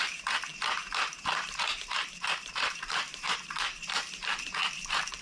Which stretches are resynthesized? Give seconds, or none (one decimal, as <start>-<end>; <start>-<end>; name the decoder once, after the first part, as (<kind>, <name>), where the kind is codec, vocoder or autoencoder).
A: 0.0-4.6 (vocoder, BigVGAN v2)